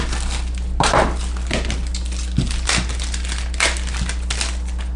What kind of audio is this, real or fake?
real